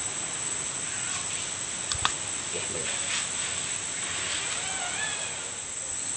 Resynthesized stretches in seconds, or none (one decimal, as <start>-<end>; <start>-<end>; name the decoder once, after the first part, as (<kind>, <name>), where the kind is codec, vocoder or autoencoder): none